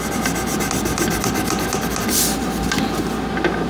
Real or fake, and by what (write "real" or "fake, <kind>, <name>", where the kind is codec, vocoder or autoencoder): real